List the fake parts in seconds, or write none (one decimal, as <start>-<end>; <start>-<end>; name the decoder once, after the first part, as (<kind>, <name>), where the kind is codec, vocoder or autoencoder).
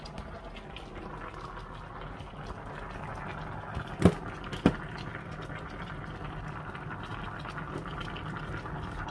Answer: none